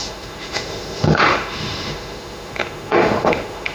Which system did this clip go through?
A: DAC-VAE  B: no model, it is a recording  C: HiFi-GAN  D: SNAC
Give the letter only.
A